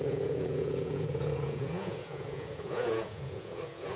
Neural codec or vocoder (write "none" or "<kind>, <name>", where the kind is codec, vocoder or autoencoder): vocoder, Vocos